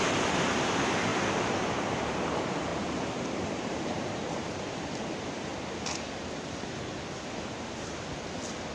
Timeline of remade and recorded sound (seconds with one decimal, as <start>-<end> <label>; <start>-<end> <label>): 0.0-1.1 recorded; 1.1-2.2 remade; 2.2-2.7 recorded; 2.7-4.5 remade; 4.5-8.7 recorded